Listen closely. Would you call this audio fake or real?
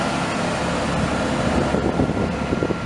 real